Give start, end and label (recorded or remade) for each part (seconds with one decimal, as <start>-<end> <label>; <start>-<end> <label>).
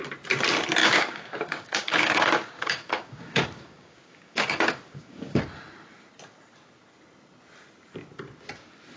0.0-0.8 recorded; 0.8-5.4 remade; 5.4-9.0 recorded